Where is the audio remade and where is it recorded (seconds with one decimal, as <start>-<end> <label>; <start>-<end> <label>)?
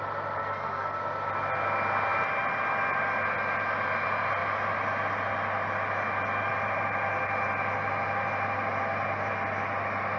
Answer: 0.0-0.4 recorded; 0.4-1.0 remade; 1.0-10.2 recorded